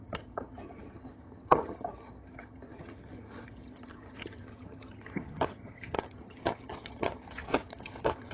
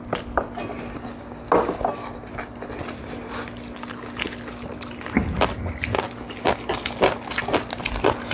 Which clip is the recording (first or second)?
second